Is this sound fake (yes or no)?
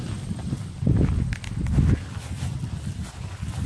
no